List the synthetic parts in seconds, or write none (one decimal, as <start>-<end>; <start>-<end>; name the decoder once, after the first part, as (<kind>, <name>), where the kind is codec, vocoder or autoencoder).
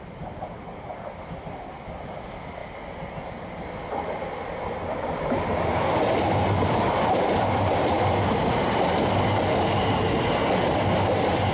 none